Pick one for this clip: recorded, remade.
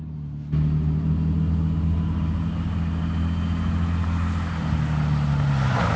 recorded